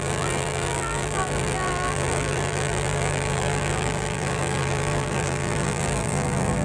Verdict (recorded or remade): remade